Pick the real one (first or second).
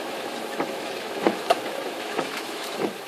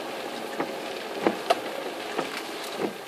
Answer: second